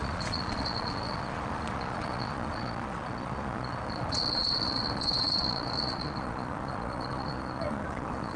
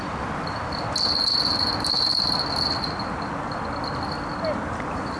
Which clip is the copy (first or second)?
first